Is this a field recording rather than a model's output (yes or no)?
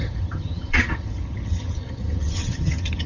no